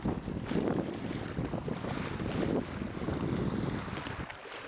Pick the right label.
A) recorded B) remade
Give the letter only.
A